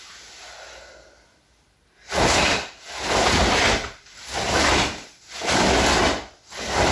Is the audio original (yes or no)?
yes